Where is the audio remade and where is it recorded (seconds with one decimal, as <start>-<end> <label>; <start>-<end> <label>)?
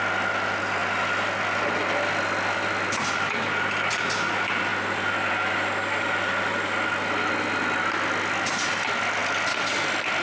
0.0-10.2 recorded